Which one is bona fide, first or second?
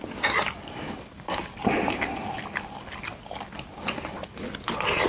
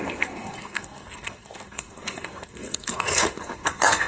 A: first